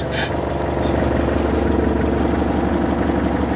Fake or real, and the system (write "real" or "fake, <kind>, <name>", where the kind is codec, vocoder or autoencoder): real